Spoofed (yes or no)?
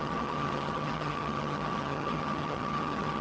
yes